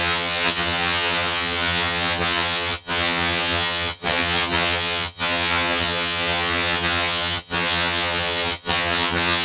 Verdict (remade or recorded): remade